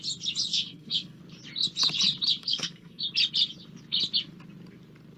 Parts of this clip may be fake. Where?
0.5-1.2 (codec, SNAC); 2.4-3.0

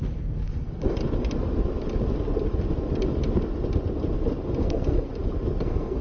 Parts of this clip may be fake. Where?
0.0-1.0 (codec, SNAC); 4.6-5.1; 5.6-6.0

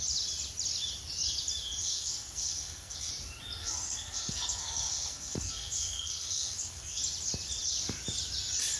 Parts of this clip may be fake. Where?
1.8-3.1 (codec, SNAC); 3.6-7.0

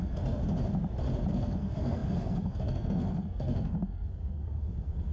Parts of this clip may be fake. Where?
0.0-0.4 (codec, SNAC); 1.3-5.1

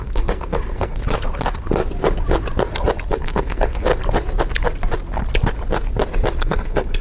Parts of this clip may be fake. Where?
0.0-1.0 (codec, SNAC); 3.1-3.9; 6.4-7.0

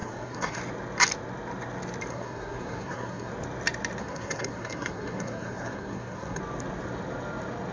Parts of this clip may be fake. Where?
0.0-0.6 (codec, SNAC); 2.1-3.3; 4.0-6.4

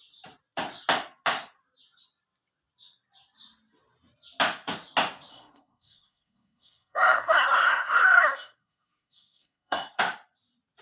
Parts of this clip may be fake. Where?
5.3-10.0 (codec, SNAC)

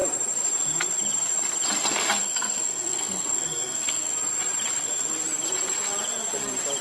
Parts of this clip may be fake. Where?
2.2-4.1 (codec, SNAC)